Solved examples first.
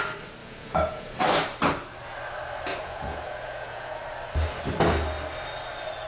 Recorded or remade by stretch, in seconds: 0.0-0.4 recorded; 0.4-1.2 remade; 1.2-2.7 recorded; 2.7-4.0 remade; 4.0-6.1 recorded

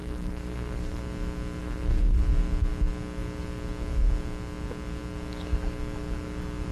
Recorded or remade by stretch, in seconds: 0.0-1.0 remade; 1.0-1.6 recorded; 1.6-2.2 remade; 2.2-6.7 recorded

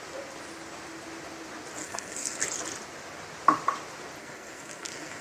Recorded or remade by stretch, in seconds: 0.0-1.8 recorded; 1.8-2.4 remade; 2.4-4.2 recorded; 4.2-5.2 remade

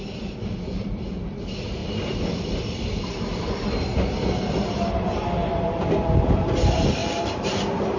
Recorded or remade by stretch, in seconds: 0.0-8.0 recorded

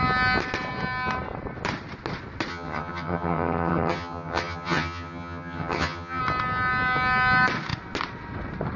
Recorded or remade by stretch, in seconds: 0.0-2.5 recorded; 2.5-6.2 remade; 6.2-8.8 recorded

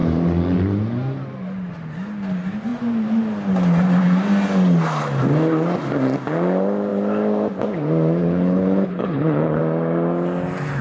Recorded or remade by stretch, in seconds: 0.0-8.2 recorded; 8.2-9.6 remade; 9.6-10.8 recorded